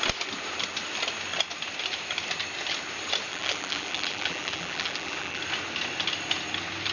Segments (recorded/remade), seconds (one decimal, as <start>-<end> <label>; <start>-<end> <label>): 0.0-3.3 recorded; 3.3-5.4 remade; 5.4-6.9 recorded